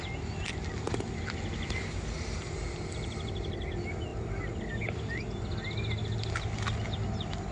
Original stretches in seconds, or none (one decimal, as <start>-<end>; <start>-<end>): 0.0-7.5

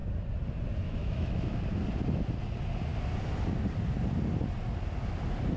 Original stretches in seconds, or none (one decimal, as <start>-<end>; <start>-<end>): 0.0-1.0; 1.6-5.6